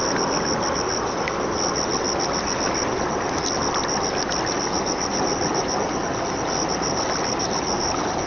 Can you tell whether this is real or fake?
real